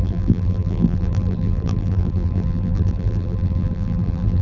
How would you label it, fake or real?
fake